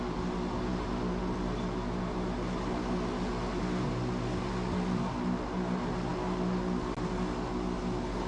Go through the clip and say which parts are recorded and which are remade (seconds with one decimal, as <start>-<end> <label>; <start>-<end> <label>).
0.0-8.3 recorded